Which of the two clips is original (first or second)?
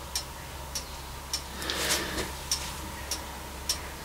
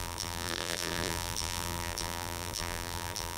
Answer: first